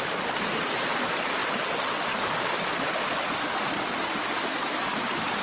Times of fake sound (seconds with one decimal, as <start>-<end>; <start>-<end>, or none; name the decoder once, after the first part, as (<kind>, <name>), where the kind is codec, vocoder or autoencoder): 0.0-1.4 (vocoder, BigVGAN v2); 4.6-5.4